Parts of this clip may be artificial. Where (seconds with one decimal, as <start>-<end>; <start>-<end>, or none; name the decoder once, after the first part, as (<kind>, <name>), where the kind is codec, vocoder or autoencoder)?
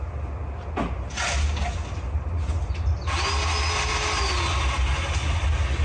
none